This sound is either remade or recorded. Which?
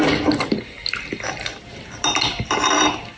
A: recorded